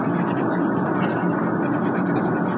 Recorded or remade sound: recorded